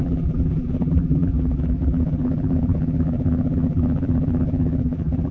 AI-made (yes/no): yes